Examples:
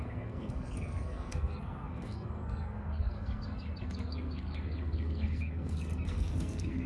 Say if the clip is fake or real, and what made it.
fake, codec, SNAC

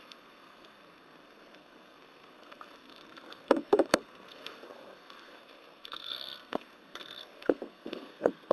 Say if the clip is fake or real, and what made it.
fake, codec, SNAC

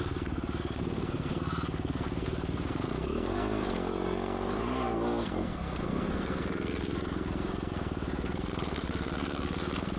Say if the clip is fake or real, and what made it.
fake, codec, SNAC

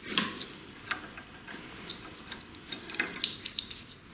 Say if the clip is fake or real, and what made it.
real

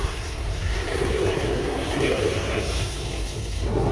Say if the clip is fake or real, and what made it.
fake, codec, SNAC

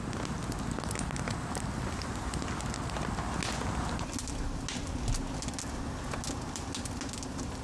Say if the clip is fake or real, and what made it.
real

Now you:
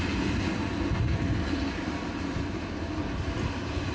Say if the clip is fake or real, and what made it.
real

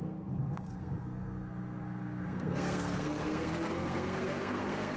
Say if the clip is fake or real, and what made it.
fake, codec, SNAC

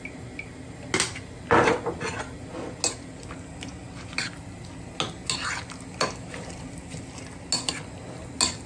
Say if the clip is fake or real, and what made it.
real